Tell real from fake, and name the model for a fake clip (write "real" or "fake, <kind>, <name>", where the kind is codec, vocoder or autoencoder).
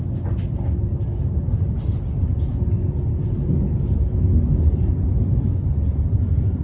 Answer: real